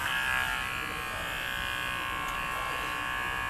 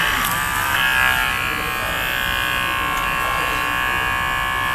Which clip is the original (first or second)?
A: second